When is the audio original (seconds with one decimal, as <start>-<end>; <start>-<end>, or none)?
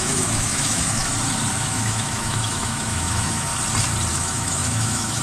1.0-1.5; 3.5-4.1